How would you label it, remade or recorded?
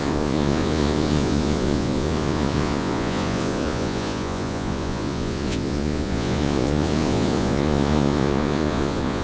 remade